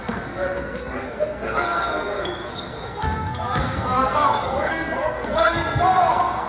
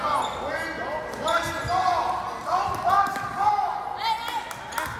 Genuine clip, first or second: second